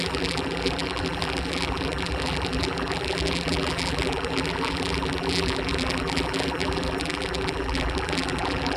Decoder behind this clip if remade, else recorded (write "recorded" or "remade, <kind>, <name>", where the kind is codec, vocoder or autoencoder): remade, vocoder, BigVGAN v2